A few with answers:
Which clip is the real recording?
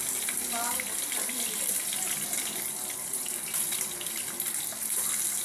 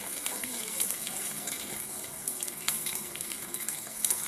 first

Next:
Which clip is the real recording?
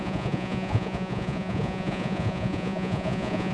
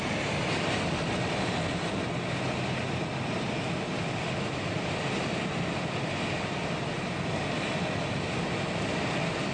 second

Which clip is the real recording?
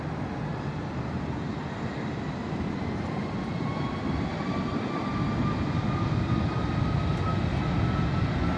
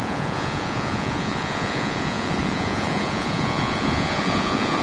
first